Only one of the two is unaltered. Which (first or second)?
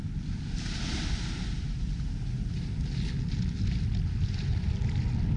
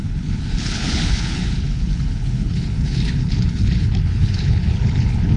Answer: first